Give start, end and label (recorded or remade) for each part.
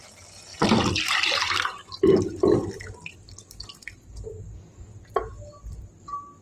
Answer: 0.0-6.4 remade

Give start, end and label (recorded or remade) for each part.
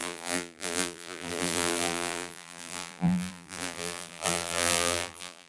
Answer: 0.0-5.5 remade